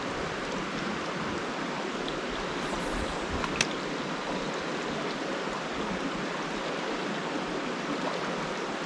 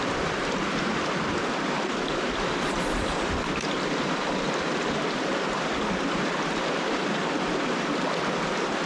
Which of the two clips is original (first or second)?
first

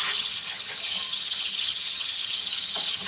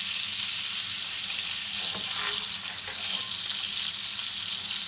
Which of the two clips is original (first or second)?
second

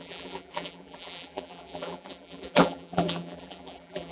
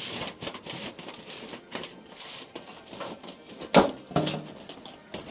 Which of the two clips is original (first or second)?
second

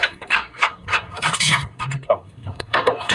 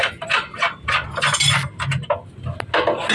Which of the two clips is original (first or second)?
second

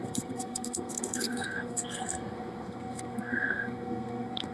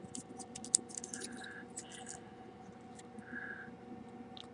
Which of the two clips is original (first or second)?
second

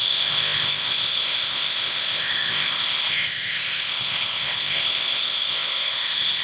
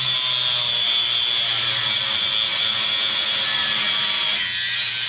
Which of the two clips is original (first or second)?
second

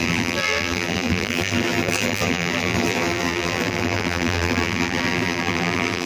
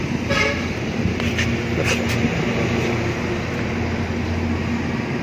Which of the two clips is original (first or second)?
second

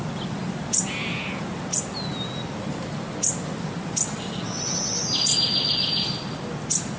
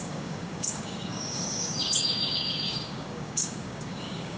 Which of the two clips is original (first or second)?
first